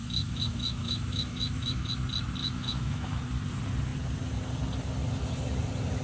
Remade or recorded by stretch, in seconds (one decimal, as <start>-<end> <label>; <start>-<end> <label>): 0.0-1.9 remade; 1.9-2.4 recorded; 2.4-3.2 remade; 3.2-6.0 recorded